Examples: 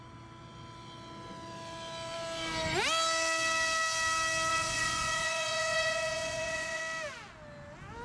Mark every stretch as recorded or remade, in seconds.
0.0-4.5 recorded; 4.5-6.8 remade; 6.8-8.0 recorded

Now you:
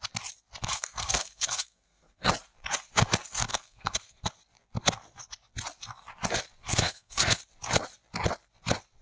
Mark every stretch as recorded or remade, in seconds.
0.0-0.6 recorded; 0.6-2.3 remade; 2.3-3.5 recorded; 3.5-4.3 remade; 4.3-6.6 recorded; 6.6-7.4 remade; 7.4-9.0 recorded

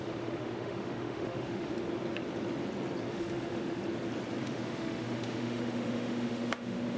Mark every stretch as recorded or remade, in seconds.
0.0-1.7 remade; 1.7-3.1 recorded; 3.1-3.8 remade; 3.8-4.4 recorded; 4.4-7.0 remade